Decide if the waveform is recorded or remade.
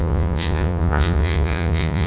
remade